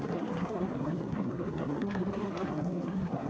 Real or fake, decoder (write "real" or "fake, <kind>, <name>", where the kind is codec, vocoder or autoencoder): fake, codec, SNAC